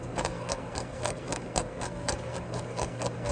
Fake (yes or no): yes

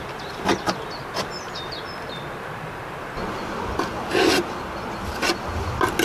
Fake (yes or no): no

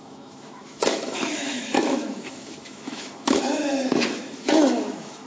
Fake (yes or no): yes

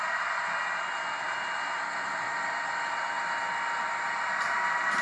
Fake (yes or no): no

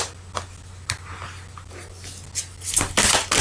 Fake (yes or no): no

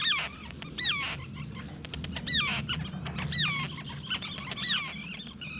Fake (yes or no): no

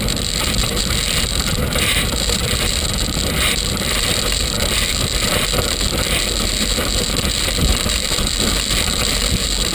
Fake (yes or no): yes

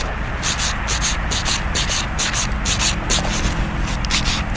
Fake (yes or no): no